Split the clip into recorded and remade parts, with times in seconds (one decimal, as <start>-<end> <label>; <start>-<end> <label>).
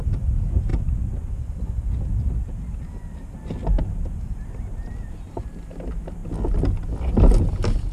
0.0-7.9 recorded